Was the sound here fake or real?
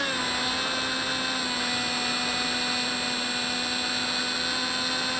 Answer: real